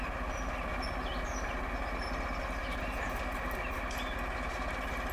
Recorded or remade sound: recorded